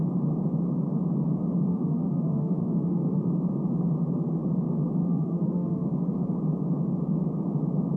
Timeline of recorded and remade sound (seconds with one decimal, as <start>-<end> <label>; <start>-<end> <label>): 0.0-1.7 recorded; 1.7-3.3 remade; 3.3-5.0 recorded; 5.0-5.9 remade; 5.9-8.0 recorded